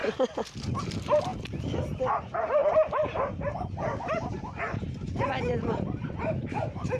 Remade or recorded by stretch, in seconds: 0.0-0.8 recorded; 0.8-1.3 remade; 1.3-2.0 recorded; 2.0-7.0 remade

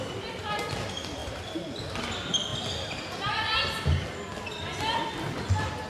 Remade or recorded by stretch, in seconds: 0.0-1.2 recorded; 1.2-1.8 remade; 1.8-5.9 recorded

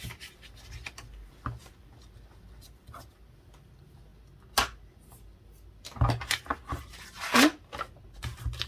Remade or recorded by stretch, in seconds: 0.0-8.7 recorded